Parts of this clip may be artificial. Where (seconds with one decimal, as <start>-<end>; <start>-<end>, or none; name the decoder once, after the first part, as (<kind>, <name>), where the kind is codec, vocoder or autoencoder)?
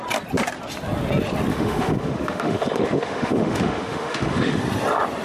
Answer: 1.5-4.6 (autoencoder, DAC-VAE)